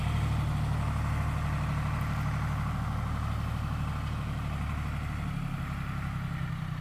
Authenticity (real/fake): real